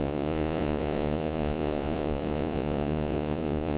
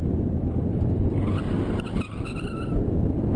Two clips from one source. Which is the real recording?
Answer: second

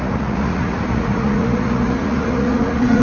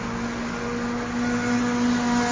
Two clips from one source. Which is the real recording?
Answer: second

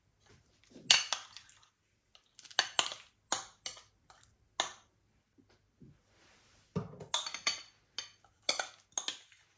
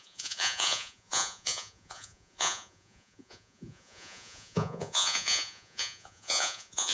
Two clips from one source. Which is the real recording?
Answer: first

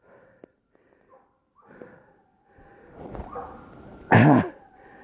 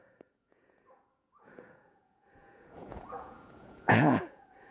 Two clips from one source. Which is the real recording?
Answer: first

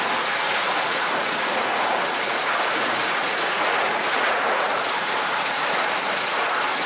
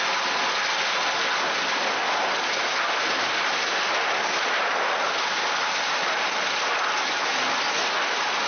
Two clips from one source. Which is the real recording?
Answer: second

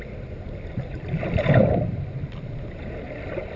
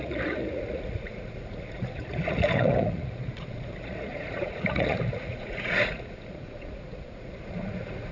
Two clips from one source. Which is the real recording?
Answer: first